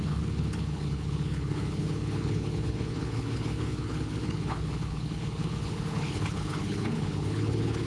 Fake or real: fake